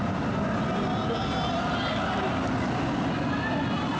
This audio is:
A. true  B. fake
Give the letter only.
A